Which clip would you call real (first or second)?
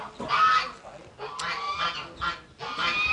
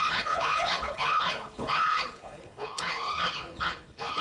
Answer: first